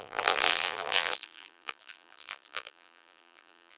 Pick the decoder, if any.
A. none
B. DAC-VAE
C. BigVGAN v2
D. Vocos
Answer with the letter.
C